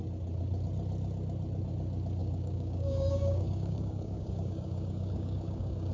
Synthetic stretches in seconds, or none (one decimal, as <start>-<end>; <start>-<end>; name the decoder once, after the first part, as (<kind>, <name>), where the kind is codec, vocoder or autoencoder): 2.2-5.9 (codec, DAC)